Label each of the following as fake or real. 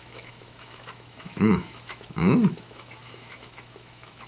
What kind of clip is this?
fake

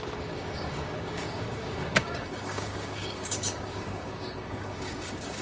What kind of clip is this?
fake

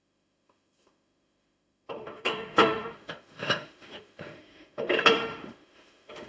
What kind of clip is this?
fake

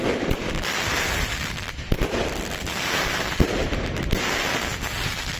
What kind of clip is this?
real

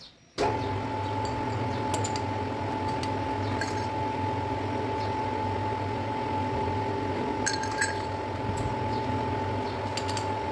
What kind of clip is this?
real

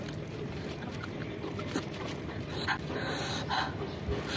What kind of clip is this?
real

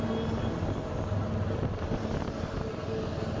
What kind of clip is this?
real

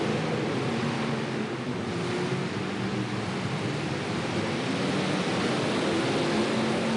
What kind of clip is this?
real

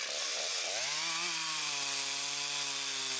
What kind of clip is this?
real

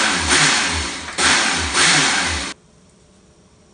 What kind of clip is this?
real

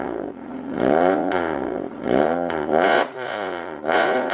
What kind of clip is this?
fake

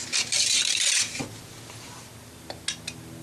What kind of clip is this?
real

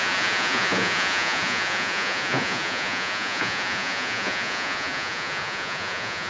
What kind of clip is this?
fake